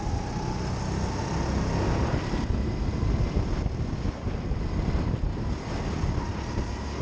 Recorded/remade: recorded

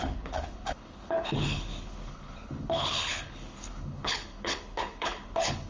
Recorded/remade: remade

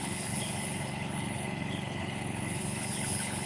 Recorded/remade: remade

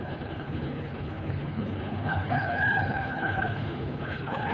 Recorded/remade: remade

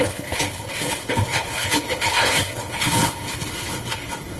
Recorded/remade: remade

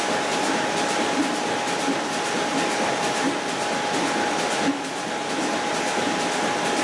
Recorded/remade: recorded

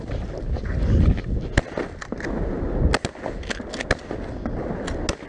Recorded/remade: recorded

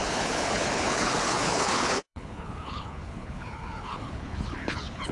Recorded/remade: remade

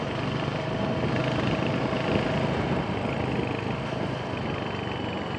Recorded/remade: recorded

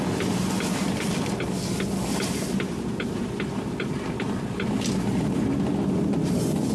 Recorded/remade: recorded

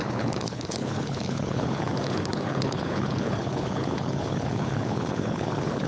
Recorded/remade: remade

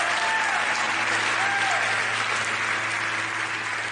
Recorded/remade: recorded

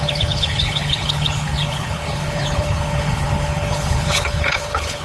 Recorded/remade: remade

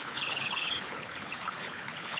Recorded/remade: remade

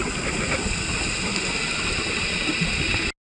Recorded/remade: recorded